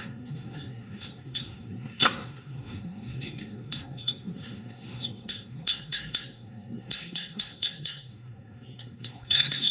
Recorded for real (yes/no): no